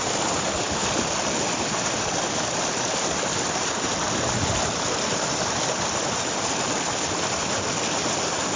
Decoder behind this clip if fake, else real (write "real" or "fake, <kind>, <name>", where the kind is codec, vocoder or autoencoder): real